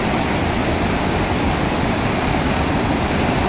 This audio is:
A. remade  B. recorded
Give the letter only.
B